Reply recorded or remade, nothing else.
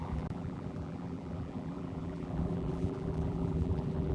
remade